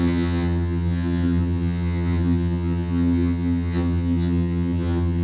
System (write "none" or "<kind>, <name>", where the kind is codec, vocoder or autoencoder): vocoder, HiFi-GAN